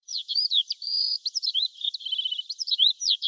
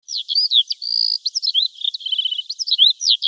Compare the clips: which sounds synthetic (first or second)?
first